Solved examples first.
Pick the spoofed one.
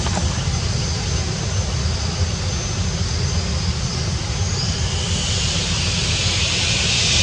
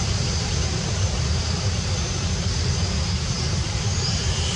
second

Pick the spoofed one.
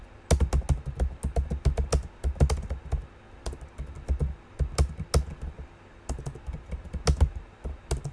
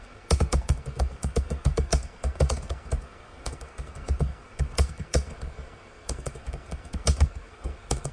second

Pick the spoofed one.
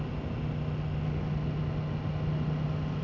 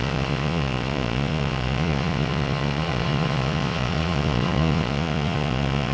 second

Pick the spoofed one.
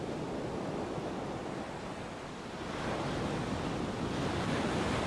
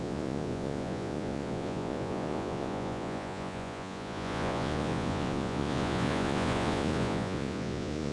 second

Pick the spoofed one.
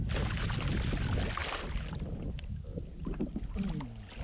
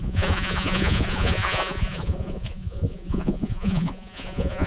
second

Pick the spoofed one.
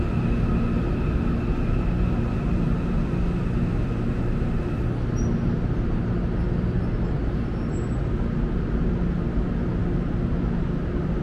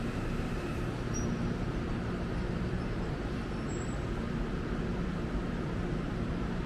second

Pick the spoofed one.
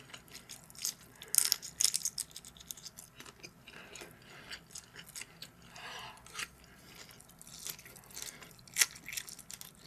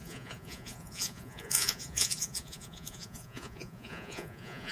second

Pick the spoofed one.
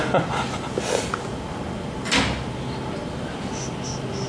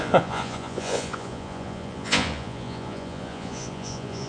second